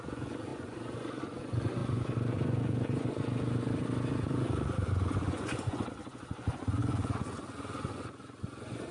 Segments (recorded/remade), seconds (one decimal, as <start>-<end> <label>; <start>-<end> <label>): 0.0-8.9 remade